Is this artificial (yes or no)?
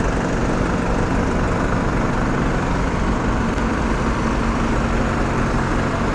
no